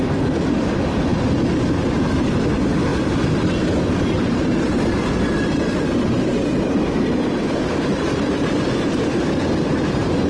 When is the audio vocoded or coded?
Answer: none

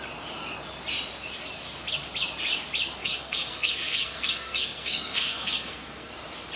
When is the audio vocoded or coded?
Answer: 3.0-6.1

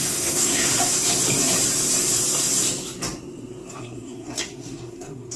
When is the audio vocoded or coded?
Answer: 0.0-0.7; 3.7-5.4

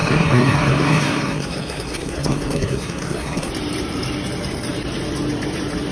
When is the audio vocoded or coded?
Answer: 0.0-3.5

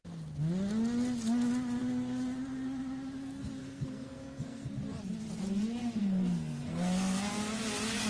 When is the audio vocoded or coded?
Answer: 3.6-4.7; 6.0-7.3

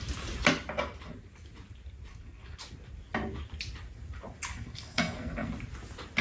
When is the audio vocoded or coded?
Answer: 2.1-2.6; 4.5-5.5